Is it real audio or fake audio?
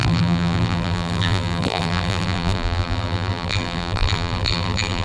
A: fake